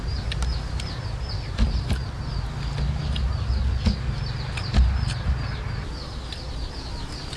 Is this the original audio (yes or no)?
yes